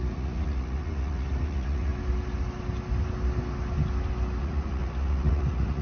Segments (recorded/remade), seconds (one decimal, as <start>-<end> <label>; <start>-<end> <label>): 0.0-1.9 remade; 1.9-4.4 recorded; 4.4-5.8 remade